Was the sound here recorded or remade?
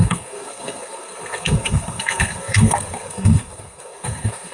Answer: remade